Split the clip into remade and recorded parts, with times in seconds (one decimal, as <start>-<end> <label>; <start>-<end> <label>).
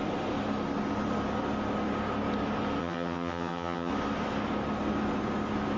0.0-2.8 recorded; 2.8-3.9 remade; 3.9-5.8 recorded